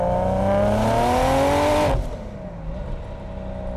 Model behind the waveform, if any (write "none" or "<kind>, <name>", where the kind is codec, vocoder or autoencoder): none